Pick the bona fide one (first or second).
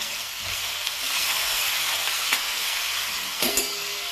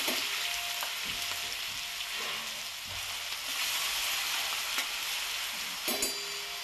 second